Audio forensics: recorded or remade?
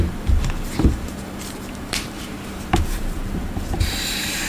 remade